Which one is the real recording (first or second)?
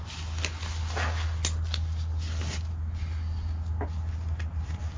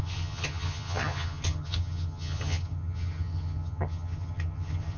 first